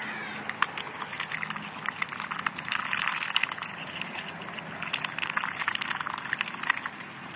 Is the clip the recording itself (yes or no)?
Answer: yes